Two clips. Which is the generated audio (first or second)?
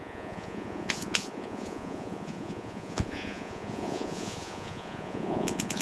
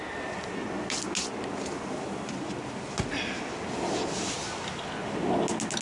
first